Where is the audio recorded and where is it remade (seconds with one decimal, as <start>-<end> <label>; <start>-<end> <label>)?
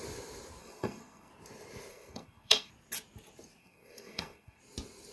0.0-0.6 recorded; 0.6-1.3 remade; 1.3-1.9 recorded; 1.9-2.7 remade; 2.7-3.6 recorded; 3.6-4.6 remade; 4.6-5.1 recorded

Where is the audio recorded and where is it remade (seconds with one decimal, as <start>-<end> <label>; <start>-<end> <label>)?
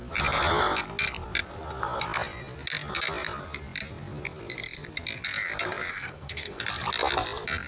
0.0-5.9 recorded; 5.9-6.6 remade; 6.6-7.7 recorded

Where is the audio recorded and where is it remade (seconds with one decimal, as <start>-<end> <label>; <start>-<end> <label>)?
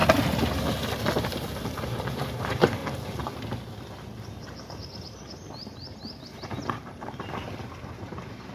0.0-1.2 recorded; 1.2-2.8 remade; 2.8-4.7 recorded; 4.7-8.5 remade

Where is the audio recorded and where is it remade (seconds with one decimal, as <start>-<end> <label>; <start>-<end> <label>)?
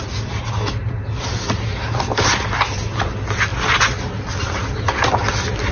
0.0-5.7 recorded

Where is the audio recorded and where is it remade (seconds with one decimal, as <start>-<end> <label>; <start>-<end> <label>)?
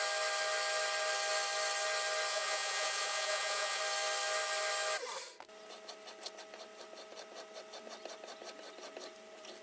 0.0-2.3 recorded; 2.3-3.8 remade; 3.8-9.6 recorded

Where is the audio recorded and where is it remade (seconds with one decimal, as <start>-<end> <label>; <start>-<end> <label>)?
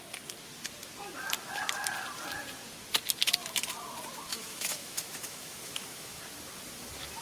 0.0-4.3 recorded; 4.3-6.2 remade; 6.2-7.2 recorded